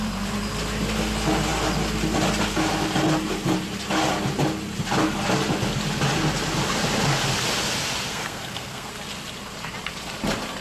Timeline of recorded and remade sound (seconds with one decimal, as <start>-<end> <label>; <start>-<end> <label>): 0.0-8.1 recorded; 8.1-8.9 remade; 8.9-10.6 recorded